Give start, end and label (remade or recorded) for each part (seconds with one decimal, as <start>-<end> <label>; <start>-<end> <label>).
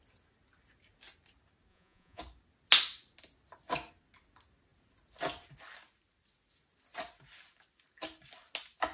0.0-1.7 recorded; 1.7-2.2 remade; 2.2-8.9 recorded